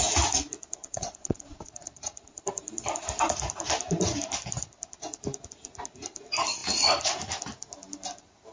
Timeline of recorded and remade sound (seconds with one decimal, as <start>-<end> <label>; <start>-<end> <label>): 0.0-0.8 recorded; 0.8-2.4 remade; 2.4-8.5 recorded